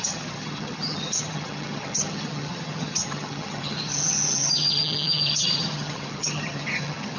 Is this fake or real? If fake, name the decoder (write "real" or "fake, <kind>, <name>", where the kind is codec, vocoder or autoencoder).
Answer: fake, vocoder, HiFi-GAN